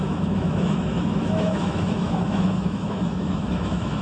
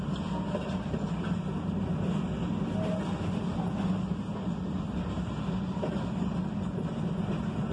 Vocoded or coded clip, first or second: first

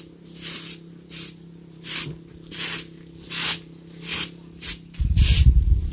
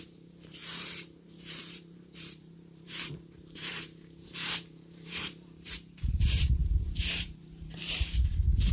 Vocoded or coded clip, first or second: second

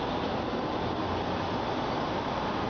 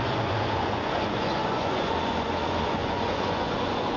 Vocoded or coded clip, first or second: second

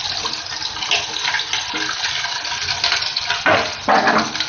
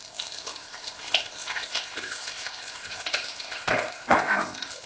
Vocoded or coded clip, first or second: second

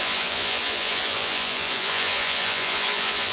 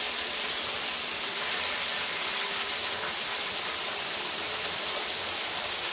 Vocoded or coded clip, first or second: first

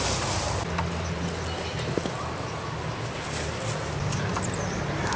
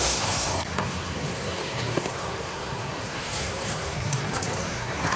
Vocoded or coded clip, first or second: second